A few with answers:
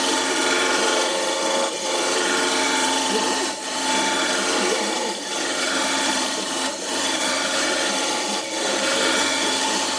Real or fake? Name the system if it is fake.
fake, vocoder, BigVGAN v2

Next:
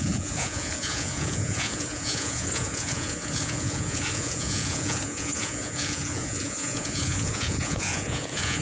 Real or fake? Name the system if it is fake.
fake, vocoder, Vocos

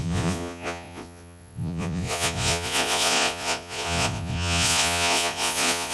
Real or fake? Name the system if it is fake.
fake, vocoder, Vocos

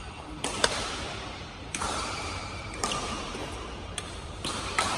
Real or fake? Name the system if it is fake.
fake, vocoder, BigVGAN v2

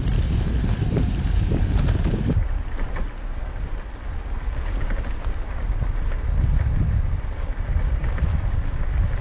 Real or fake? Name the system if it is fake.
real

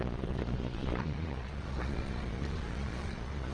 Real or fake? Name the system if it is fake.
fake, vocoder, Vocos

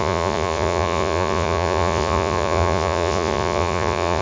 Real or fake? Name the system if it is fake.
fake, vocoder, Vocos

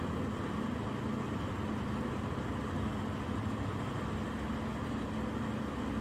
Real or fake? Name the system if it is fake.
real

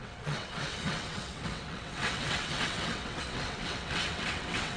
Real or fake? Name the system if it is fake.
fake, vocoder, WaveNeXt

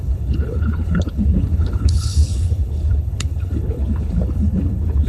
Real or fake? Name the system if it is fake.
fake, codec, HILCodec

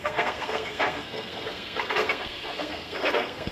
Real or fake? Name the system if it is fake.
fake, codec, SNAC